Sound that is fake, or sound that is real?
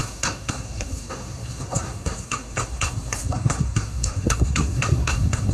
fake